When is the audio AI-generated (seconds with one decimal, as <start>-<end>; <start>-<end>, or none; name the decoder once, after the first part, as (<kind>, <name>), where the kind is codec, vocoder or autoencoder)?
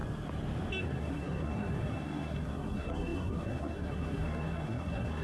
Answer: 0.8-5.2 (codec, SNAC)